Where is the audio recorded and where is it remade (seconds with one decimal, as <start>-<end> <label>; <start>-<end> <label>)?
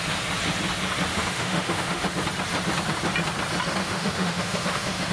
0.0-1.1 recorded; 1.1-2.0 remade; 2.0-3.8 recorded; 3.8-5.1 remade